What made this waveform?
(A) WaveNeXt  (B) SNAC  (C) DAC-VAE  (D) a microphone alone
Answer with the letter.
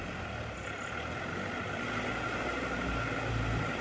D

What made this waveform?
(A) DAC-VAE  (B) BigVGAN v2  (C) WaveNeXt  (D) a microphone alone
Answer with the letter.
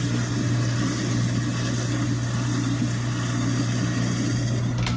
D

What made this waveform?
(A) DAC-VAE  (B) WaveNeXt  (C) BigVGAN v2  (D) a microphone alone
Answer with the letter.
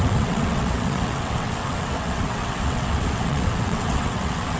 B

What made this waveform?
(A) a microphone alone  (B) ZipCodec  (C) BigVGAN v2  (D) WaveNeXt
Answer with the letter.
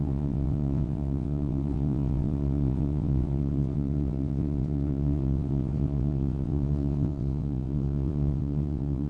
D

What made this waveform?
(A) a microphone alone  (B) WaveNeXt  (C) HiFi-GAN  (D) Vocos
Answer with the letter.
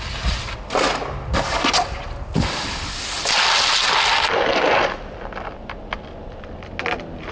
A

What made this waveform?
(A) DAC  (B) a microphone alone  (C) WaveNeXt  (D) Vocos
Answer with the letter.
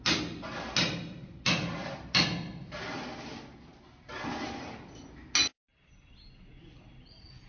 B